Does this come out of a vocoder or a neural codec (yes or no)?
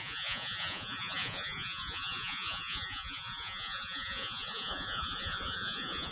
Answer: yes